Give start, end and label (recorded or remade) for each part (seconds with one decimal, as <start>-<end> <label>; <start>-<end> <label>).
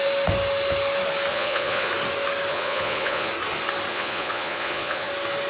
0.0-1.3 recorded; 1.3-1.9 remade; 1.9-2.5 recorded; 2.5-3.3 remade; 3.3-3.9 recorded; 3.9-5.1 remade; 5.1-5.5 recorded